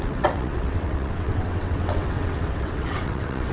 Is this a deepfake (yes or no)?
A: yes